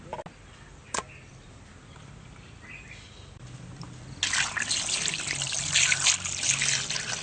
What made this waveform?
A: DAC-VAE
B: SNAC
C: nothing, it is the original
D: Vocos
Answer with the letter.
C